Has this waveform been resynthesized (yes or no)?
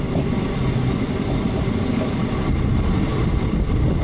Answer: yes